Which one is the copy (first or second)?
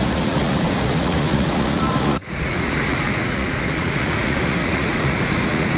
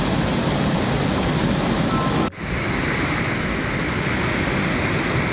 first